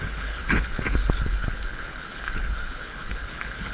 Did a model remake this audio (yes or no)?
yes